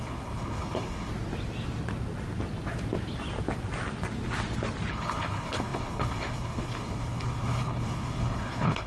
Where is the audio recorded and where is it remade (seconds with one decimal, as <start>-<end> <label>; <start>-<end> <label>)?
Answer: 0.0-1.1 remade; 1.1-4.9 recorded; 4.9-8.9 remade